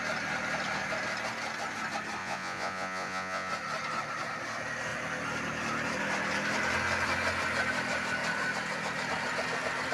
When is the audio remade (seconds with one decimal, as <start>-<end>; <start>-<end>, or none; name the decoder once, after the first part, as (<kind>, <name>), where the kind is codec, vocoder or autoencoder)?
2.2-3.5 (vocoder, Vocos)